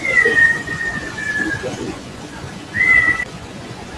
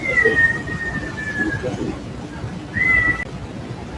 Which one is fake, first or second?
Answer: first